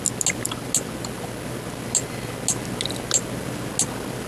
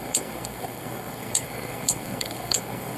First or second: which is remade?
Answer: second